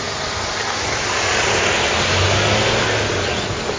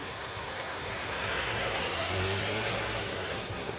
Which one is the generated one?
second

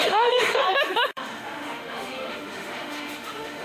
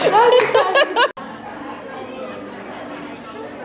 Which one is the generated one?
first